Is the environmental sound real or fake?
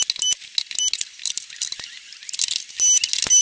real